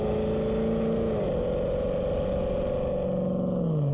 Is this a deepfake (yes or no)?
no